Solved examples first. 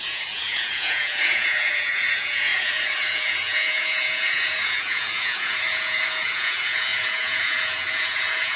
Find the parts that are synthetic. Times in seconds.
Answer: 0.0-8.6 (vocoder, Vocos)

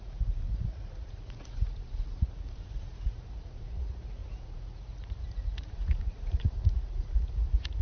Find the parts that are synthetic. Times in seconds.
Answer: 0.0-7.8 (vocoder, Vocos)

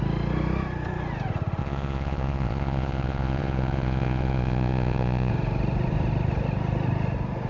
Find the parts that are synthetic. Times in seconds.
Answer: 1.6-5.3 (vocoder, Vocos)

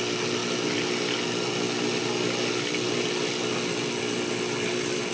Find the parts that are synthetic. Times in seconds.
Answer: none